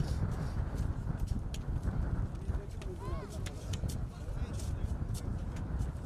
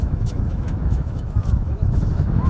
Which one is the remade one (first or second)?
second